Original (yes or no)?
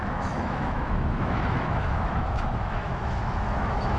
no